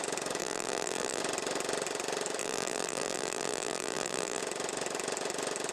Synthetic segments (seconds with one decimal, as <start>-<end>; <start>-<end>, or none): 0.4-1.2; 2.4-4.4